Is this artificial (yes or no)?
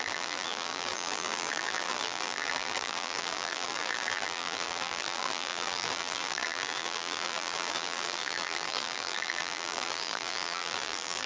yes